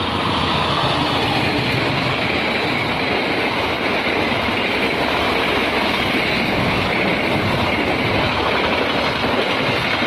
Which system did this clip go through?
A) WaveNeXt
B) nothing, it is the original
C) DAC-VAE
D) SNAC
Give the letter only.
B